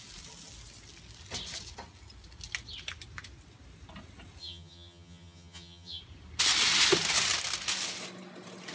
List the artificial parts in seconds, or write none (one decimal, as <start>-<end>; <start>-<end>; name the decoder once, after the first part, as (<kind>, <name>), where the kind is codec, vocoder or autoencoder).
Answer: 4.4-6.0 (vocoder, HiFi-GAN)